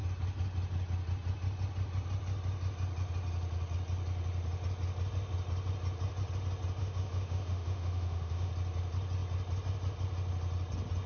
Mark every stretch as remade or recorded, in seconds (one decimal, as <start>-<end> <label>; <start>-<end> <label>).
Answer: 0.0-6.8 recorded; 6.8-8.5 remade; 8.5-11.1 recorded